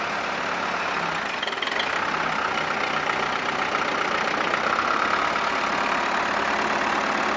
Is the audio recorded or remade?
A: recorded